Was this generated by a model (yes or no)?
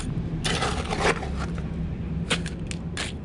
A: no